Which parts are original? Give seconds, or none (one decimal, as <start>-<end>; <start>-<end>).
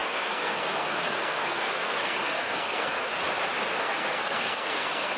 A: 3.2-3.8